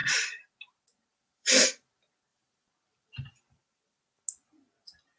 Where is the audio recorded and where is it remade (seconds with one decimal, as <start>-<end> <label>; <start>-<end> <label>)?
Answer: 0.0-0.5 remade; 0.5-1.1 recorded; 1.1-1.6 remade; 1.6-2.3 recorded; 2.3-4.0 remade; 4.0-5.2 recorded